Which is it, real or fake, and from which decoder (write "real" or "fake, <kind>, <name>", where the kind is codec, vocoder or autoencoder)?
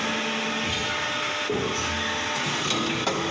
real